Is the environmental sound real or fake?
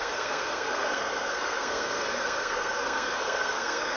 fake